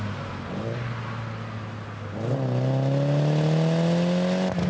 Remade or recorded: recorded